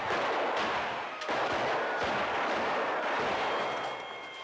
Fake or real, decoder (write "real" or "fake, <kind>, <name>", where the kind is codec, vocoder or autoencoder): real